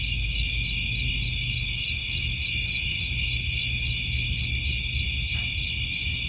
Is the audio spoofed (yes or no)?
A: no